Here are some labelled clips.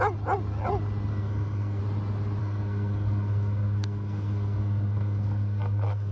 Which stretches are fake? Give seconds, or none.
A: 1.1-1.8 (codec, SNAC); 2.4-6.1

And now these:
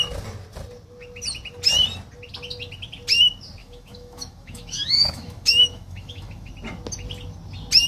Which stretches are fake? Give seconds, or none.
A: 3.6-6.5 (autoencoder, DAC-VAE)

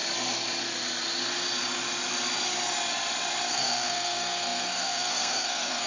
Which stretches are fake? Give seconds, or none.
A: 3.5-5.9 (codec, SNAC)

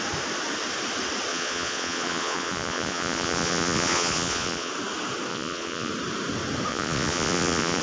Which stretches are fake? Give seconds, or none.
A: 1.3-4.7 (vocoder, Vocos); 5.3-5.9; 6.7-7.8

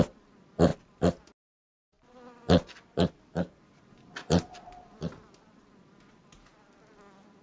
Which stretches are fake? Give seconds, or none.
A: none

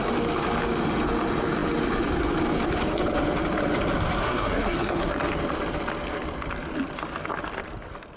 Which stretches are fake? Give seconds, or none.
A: 4.2-5.1 (codec, SNAC)

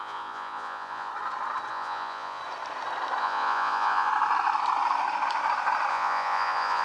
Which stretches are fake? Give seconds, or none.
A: 0.0-1.1 (vocoder, Vocos); 1.7-2.4; 3.2-4.1; 5.9-6.8

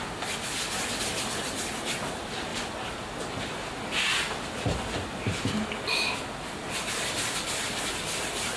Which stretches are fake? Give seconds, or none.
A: none